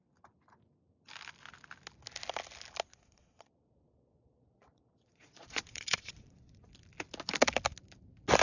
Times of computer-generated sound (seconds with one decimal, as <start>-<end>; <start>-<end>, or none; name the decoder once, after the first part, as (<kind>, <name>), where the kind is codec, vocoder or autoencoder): 2.9-6.6 (vocoder, Vocos)